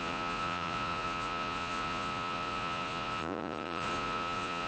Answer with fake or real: fake